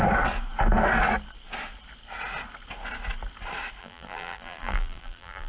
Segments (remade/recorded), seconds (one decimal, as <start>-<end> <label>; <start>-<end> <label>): 0.0-3.8 recorded; 3.8-5.5 remade